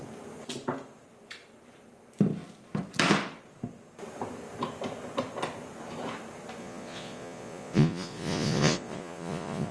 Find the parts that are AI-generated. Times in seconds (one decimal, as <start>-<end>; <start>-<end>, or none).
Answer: 6.6-9.7